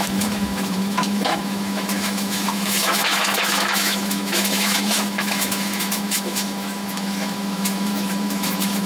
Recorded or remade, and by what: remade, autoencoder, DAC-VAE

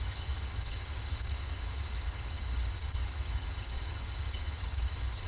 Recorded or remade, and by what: remade, vocoder, HiFi-GAN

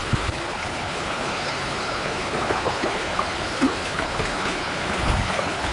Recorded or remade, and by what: remade, codec, HILCodec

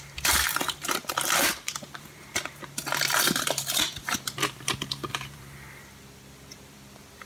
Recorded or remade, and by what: remade, vocoder, BigVGAN v2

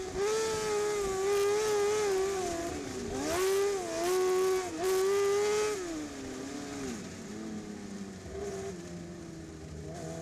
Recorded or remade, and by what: recorded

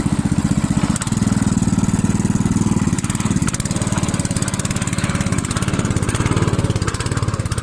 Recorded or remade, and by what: recorded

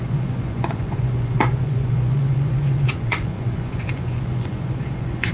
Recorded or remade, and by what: remade, vocoder, Vocos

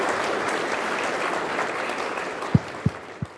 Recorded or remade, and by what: recorded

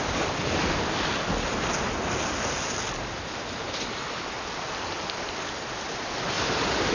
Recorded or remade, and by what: recorded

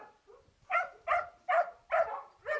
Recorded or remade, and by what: recorded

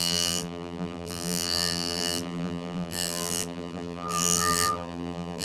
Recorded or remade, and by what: remade, vocoder, BigVGAN v2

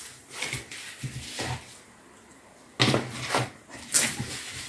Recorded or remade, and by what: recorded